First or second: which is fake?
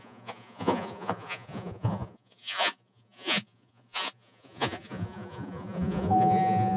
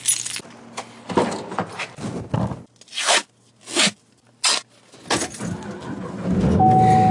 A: first